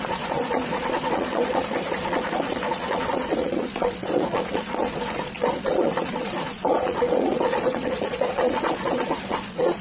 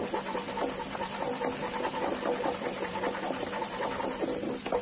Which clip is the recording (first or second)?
second